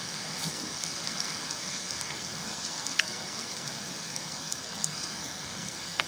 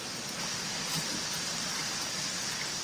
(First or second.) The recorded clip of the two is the second